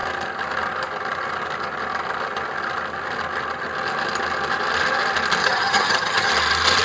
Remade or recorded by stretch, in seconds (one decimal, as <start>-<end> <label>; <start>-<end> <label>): 0.0-5.4 recorded; 5.4-6.3 remade; 6.3-6.8 recorded